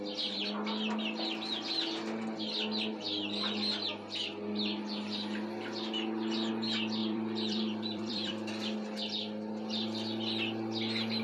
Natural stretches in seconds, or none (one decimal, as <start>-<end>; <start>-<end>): 0.0-7.0; 8.5-11.2